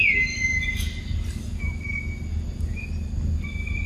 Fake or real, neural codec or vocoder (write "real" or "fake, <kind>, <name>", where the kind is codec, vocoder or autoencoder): real